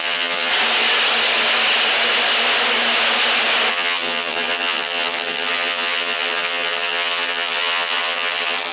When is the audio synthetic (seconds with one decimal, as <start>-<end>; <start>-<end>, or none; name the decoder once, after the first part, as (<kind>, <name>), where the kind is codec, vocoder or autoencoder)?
0.0-0.5 (vocoder, HiFi-GAN); 3.7-8.7